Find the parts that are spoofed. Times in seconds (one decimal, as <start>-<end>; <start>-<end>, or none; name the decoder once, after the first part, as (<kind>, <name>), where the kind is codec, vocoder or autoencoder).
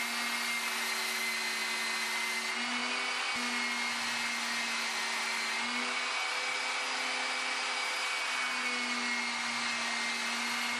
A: none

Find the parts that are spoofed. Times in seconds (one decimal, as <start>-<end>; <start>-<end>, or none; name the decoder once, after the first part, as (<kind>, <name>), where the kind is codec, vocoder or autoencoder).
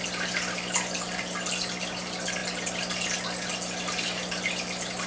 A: none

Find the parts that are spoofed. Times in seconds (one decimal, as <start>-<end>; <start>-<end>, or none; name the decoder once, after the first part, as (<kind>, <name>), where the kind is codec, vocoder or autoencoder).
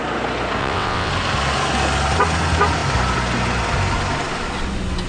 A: 0.6-1.1 (vocoder, WaveNeXt)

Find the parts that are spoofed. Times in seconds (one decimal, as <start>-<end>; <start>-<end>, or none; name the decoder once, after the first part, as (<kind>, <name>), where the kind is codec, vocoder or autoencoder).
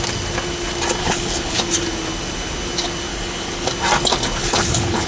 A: 1.0-1.6 (codec, HILCodec); 3.1-3.7; 4.4-5.1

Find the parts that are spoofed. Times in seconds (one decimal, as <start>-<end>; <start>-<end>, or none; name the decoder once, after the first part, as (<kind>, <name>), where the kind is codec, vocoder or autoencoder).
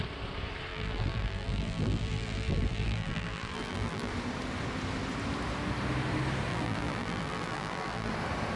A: 0.7-4.1 (vocoder, BigVGAN v2); 6.5-8.1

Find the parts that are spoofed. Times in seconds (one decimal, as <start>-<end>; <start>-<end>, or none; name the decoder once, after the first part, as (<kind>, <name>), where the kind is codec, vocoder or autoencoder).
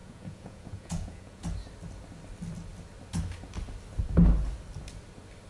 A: 0.0-1.4 (vocoder, Vocos)